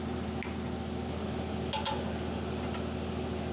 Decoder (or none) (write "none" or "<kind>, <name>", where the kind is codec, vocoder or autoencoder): none